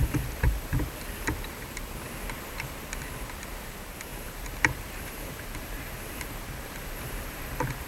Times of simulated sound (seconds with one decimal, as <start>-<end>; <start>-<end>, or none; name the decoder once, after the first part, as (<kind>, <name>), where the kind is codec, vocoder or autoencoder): 4.1-7.9 (vocoder, BigVGAN v2)